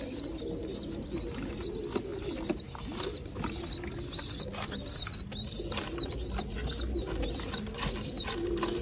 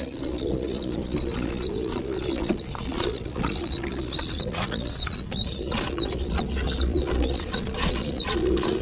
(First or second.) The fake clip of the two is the second